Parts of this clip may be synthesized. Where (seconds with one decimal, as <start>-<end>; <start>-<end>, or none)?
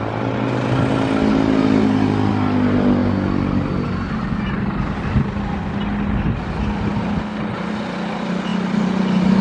none